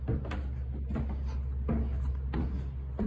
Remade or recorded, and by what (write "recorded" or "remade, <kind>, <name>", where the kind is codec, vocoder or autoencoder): recorded